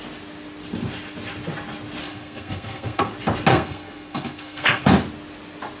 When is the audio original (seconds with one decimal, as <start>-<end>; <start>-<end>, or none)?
0.0-2.0; 3.1-3.5; 4.9-5.8